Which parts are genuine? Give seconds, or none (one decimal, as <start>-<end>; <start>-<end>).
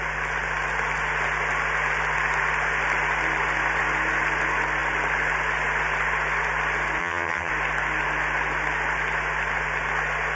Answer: 0.0-7.0; 7.5-10.4